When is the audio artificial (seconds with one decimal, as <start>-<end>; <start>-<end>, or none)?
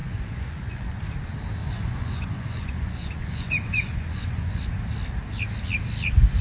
0.0-1.0; 1.6-4.6